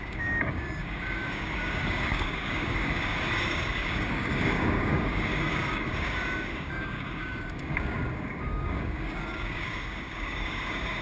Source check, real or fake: fake